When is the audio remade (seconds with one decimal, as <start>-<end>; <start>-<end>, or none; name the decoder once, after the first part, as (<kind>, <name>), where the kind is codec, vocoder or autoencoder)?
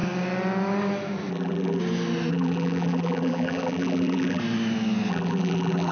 1.3-1.8 (vocoder, BigVGAN v2); 2.3-4.4; 5.1-5.9